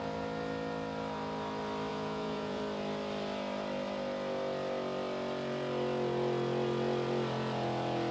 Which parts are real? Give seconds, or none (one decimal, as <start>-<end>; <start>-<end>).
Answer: 0.0-1.9; 2.6-8.1